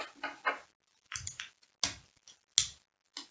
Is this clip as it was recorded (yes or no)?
yes